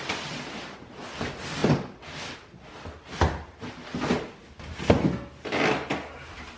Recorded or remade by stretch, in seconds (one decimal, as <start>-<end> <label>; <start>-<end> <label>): 0.0-6.6 recorded